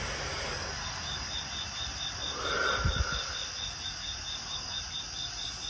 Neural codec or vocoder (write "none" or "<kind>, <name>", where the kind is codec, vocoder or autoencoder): none